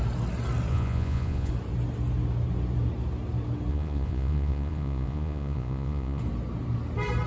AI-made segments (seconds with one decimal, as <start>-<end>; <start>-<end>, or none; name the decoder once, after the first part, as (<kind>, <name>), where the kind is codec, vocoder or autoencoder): 0.7-1.5 (vocoder, Vocos); 3.7-6.2